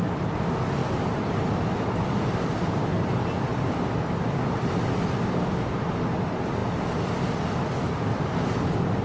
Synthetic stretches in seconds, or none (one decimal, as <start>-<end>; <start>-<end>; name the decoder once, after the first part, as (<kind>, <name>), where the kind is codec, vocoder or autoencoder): 0.8-2.9 (vocoder, BigVGAN v2); 3.5-4.8; 6.6-7.9

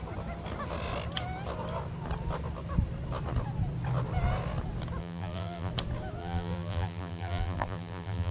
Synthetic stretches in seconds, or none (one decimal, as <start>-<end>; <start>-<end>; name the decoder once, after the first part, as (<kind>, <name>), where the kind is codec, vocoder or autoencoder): 5.0-5.7 (vocoder, BigVGAN v2); 6.2-8.3

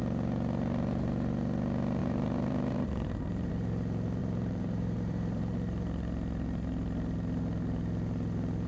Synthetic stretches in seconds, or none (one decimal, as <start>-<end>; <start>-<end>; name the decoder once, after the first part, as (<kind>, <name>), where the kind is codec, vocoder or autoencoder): 2.0-3.5 (vocoder, BigVGAN v2); 4.2-5.4

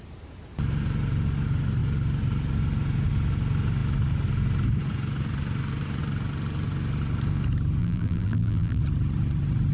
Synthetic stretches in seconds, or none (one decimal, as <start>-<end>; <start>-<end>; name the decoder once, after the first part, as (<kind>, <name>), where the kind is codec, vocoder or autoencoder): 7.8-8.8 (vocoder, BigVGAN v2)

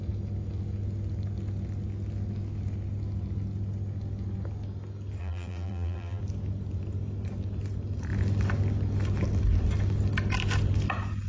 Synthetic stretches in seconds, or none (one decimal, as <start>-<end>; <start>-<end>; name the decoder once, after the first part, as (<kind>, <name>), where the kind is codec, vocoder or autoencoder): 5.2-6.2 (vocoder, BigVGAN v2)

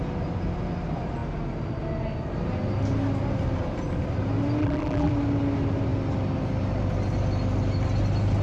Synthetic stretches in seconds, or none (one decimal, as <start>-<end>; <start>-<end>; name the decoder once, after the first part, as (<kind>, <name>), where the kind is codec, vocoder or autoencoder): 4.6-5.1 (vocoder, BigVGAN v2)